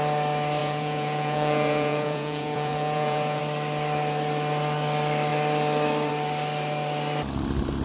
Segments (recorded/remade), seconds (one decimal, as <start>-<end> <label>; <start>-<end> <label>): 0.0-0.6 recorded; 0.6-3.4 remade; 3.4-7.8 recorded